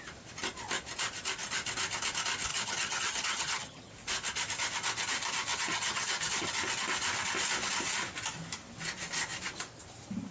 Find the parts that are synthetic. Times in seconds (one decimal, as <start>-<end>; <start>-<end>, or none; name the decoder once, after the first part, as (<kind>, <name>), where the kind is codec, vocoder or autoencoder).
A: 2.5-3.9 (vocoder, HiFi-GAN); 5.5-6.5